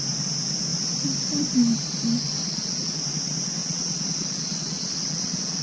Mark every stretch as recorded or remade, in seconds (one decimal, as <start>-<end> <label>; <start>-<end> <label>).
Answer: 0.0-2.4 recorded; 2.4-3.0 remade; 3.0-3.6 recorded; 3.6-5.6 remade